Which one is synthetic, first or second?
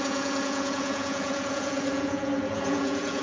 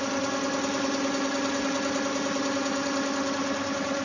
first